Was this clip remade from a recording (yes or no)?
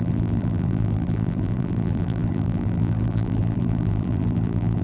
yes